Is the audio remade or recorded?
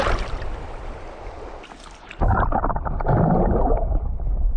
remade